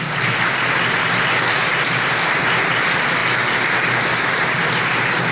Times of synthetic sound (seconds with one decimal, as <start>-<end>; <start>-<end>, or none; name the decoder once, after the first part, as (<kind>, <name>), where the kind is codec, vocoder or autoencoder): none